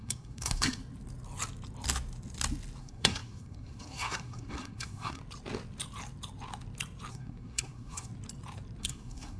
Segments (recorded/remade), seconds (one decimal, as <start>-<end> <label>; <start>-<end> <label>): 0.0-0.8 remade; 0.8-2.8 recorded; 2.8-5.2 remade; 5.2-7.1 recorded; 7.1-8.1 remade; 8.1-8.8 recorded; 8.8-9.4 remade